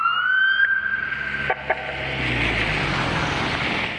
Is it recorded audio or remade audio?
recorded